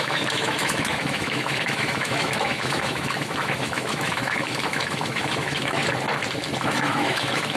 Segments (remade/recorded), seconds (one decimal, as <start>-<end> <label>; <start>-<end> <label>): 0.0-5.8 remade; 5.8-6.6 recorded; 6.6-7.6 remade

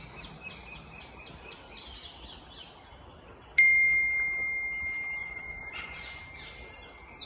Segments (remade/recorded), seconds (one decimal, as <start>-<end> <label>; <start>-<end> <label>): 0.0-5.2 recorded; 5.2-6.2 remade; 6.2-7.3 recorded

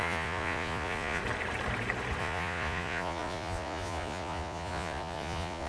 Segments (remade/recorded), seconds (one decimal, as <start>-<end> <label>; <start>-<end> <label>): 0.0-1.2 remade; 1.2-2.2 recorded; 2.2-5.7 remade

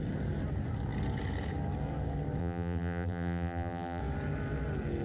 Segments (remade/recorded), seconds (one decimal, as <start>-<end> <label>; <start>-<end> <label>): 0.0-2.4 recorded; 2.4-4.0 remade; 4.0-5.0 recorded

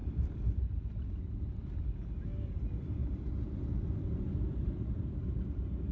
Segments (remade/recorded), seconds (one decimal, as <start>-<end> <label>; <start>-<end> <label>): 0.0-5.9 remade

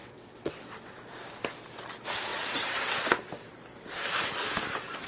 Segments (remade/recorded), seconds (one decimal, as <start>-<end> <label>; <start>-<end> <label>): 0.0-0.9 remade; 0.9-2.3 recorded; 2.3-3.0 remade; 3.0-5.1 recorded

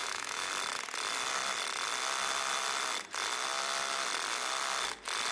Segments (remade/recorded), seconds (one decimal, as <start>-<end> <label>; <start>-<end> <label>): 0.0-0.5 remade; 0.5-5.3 recorded